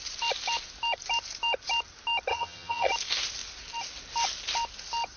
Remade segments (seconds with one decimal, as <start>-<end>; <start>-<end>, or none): 2.3-2.9